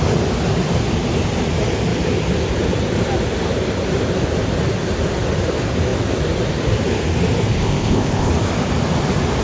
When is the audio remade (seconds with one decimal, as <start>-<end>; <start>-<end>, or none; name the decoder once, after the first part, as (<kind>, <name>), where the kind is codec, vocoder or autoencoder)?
7.5-8.3 (codec, ZipCodec)